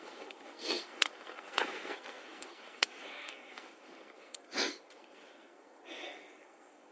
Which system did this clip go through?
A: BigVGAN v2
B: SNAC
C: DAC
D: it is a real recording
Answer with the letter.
B